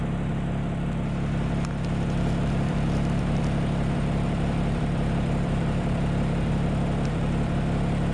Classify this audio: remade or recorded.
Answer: remade